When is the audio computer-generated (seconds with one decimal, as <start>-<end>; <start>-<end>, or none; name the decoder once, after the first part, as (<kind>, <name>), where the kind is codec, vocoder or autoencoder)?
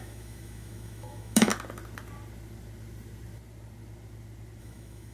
0.0-1.5 (autoencoder, DAC-VAE); 4.6-5.1